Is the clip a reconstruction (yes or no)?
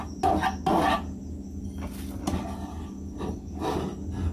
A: no